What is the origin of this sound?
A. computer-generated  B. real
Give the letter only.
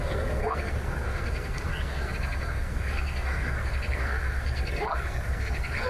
A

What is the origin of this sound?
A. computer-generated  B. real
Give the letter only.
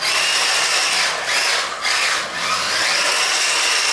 B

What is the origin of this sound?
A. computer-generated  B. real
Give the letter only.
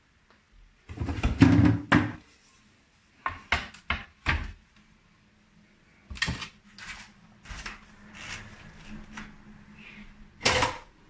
B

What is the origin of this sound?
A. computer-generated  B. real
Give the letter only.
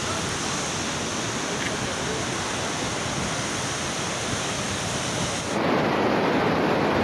B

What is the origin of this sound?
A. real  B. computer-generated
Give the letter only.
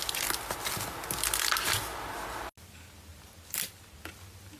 A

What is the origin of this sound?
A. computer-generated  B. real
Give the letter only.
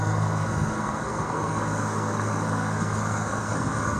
A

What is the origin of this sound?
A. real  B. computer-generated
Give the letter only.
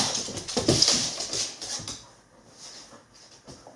A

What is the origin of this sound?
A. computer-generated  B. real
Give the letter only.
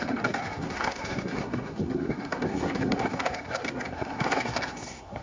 A